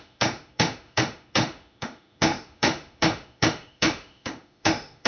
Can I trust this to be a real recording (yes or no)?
no